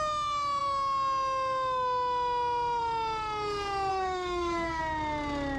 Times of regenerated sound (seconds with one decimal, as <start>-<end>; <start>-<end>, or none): 3.9-4.8